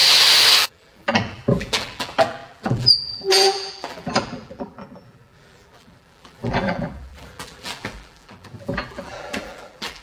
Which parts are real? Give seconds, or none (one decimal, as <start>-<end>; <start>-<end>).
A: 0.0-0.6